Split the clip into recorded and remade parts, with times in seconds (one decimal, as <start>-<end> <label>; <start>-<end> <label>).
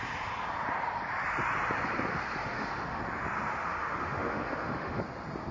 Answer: 0.0-2.4 recorded; 2.4-3.0 remade; 3.0-3.5 recorded; 3.5-5.0 remade; 5.0-5.5 recorded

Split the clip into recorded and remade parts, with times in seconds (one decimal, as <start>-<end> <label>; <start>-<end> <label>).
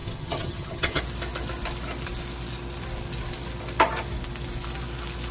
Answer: 0.0-1.0 remade; 1.0-5.3 recorded